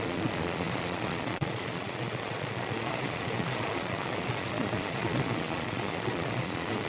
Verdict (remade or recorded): remade